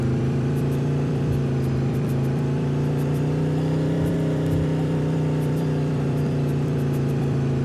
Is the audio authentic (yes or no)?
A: no